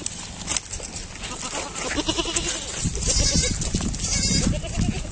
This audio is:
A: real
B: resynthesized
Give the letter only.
A